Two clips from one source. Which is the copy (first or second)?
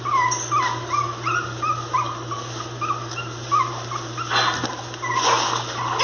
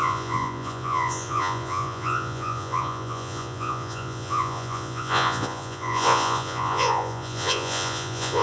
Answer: second